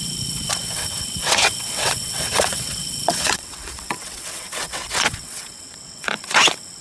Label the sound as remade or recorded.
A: remade